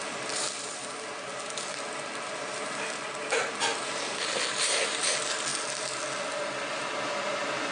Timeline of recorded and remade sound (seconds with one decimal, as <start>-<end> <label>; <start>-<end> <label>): 0.0-7.7 remade